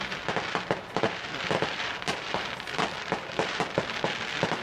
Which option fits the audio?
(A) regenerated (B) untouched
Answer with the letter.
A